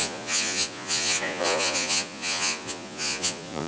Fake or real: fake